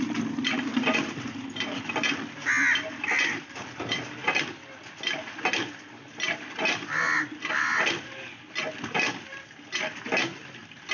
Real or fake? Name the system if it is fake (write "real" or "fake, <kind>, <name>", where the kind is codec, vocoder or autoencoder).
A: real